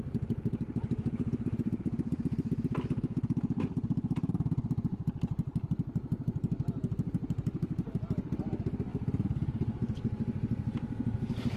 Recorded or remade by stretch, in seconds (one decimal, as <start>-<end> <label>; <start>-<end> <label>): 0.0-4.9 recorded; 4.9-5.7 remade; 5.7-11.6 recorded